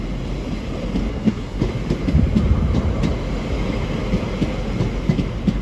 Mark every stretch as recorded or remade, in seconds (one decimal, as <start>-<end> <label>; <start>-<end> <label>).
0.0-1.1 recorded; 1.1-1.6 remade; 1.6-5.6 recorded